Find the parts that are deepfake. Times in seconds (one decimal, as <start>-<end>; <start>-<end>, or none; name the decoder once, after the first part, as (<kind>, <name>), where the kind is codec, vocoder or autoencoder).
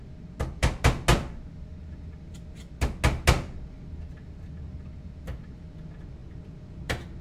none